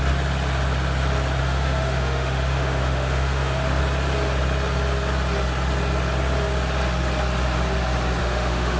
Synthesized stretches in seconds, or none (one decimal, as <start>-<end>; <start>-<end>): 1.4-3.8; 8.2-8.8